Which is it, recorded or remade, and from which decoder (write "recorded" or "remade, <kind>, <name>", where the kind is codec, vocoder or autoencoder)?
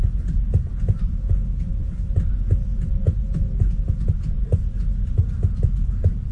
recorded